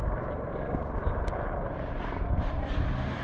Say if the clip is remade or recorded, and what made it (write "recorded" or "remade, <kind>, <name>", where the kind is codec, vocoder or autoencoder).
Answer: remade, vocoder, BigVGAN v2